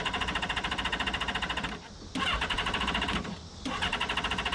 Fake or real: real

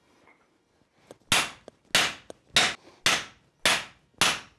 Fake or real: real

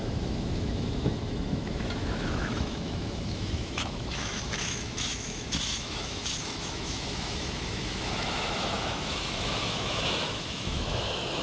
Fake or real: fake